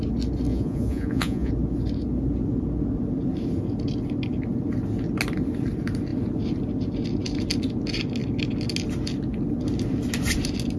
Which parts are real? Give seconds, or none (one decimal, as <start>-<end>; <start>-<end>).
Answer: 0.0-0.5; 1.5-10.8